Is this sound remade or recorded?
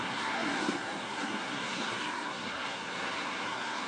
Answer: remade